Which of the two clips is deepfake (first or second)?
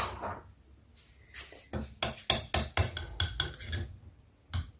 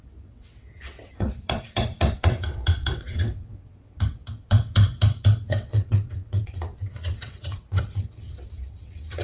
second